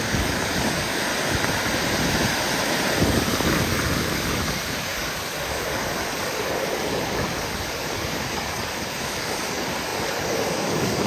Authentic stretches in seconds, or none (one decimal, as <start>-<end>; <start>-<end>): 1.1-3.0